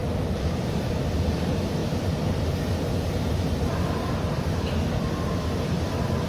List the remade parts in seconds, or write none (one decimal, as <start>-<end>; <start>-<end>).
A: 0.0-0.9; 1.8-4.8